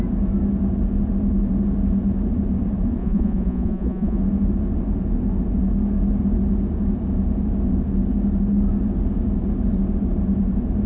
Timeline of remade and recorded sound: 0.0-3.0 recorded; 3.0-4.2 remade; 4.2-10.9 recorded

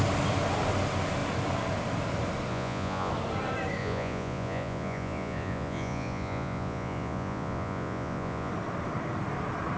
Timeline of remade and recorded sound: 0.0-2.5 recorded; 2.5-3.1 remade; 3.1-3.8 recorded; 3.8-8.5 remade; 8.5-9.8 recorded

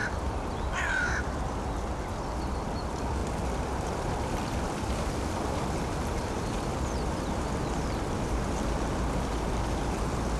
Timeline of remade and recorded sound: 0.0-1.3 remade; 1.3-3.2 recorded; 3.2-6.6 remade; 6.6-10.4 recorded

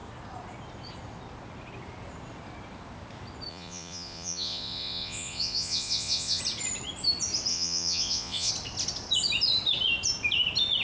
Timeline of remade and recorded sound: 0.0-3.5 recorded; 3.5-6.4 remade; 6.4-7.5 recorded; 7.5-8.5 remade; 8.5-10.8 recorded

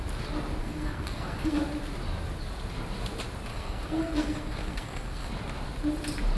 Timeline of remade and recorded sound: 0.0-0.6 recorded; 0.6-1.6 remade; 1.6-3.5 recorded; 3.5-5.3 remade; 5.3-6.4 recorded

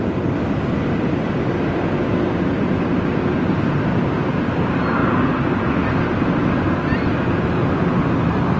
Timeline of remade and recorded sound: 0.0-8.6 recorded